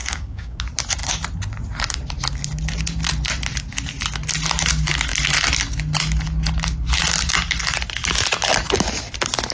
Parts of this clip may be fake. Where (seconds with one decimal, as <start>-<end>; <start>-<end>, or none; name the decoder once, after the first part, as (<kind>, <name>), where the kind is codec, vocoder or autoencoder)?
0.0-0.6 (codec, DAC)